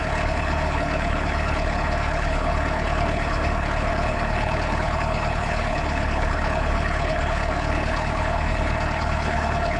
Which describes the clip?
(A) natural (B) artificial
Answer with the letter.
B